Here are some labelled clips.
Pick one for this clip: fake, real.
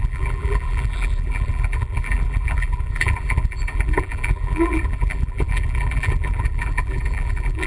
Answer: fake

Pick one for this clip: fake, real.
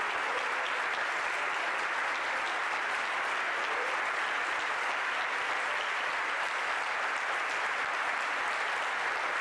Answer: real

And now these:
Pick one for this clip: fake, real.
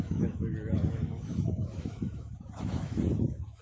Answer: fake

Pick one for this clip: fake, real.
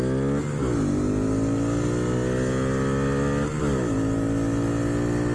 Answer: real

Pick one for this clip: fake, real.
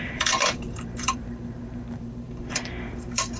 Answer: fake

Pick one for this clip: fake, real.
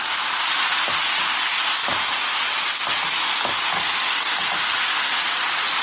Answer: fake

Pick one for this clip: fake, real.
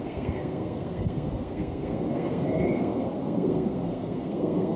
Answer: fake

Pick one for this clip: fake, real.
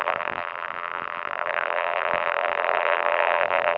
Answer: fake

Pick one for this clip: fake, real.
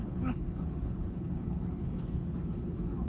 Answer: fake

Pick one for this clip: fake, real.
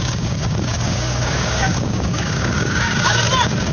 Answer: fake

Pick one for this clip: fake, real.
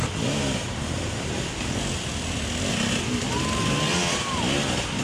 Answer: real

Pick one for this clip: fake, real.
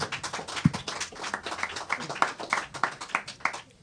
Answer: real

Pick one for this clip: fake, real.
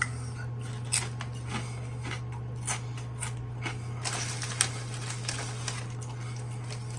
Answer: real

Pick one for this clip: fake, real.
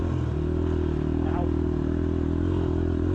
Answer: real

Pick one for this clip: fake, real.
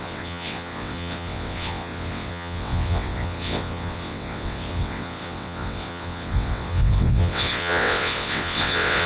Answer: fake